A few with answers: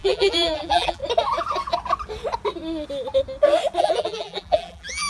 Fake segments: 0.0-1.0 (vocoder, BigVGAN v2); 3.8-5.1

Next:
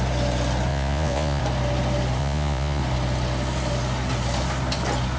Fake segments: 0.7-1.4 (vocoder, Vocos); 2.2-2.8

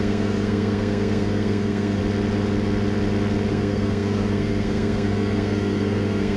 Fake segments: 0.0-2.0 (codec, SNAC); 3.5-6.4

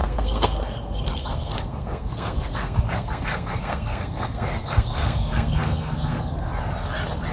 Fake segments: 0.0-6.5 (codec, SNAC)

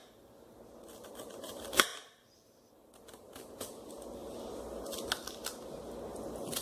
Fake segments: 1.9-3.0 (vocoder, BigVGAN v2)

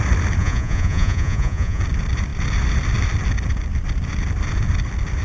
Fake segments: 0.4-1.8 (vocoder, Vocos)

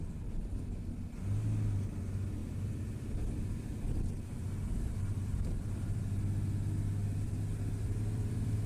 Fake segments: 2.4-6.0 (vocoder, BigVGAN v2); 7.0-8.7

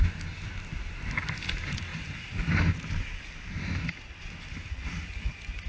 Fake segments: none